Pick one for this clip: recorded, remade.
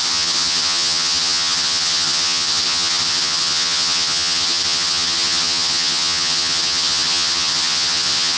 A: remade